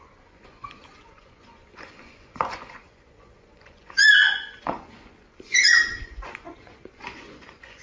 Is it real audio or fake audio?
fake